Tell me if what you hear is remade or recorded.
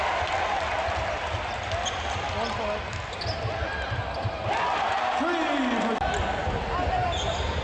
recorded